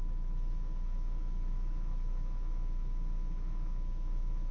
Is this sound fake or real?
fake